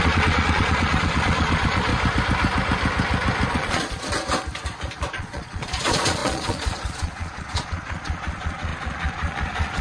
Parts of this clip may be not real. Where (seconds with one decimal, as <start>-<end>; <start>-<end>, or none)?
0.0-1.9; 3.5-4.1; 5.1-9.8